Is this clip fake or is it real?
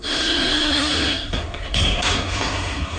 fake